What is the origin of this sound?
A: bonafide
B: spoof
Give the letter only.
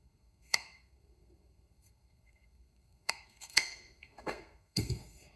B